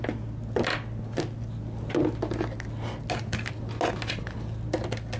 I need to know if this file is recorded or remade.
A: recorded